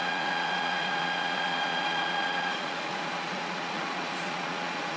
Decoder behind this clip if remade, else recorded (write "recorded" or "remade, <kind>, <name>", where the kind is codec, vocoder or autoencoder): remade, vocoder, Vocos